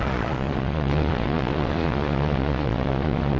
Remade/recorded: remade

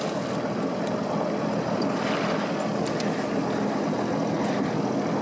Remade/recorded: recorded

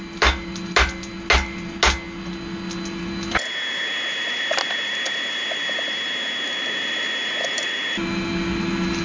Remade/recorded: recorded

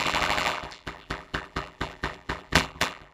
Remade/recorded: remade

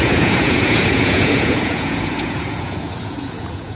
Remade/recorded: remade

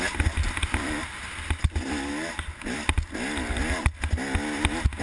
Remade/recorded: recorded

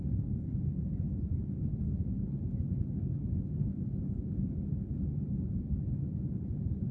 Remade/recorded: recorded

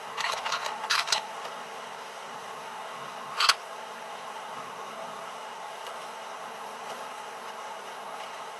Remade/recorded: remade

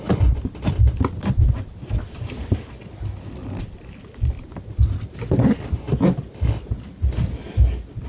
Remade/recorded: recorded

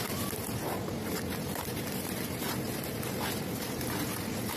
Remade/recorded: recorded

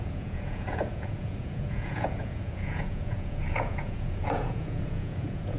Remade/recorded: remade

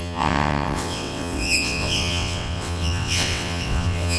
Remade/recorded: remade